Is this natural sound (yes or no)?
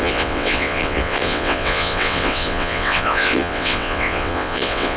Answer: no